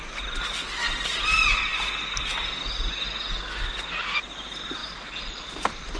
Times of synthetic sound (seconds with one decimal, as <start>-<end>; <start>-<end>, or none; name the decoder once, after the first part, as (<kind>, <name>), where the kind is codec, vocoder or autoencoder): none